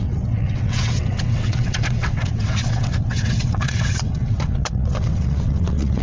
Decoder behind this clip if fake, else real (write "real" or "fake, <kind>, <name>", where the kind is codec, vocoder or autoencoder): fake, vocoder, WaveNeXt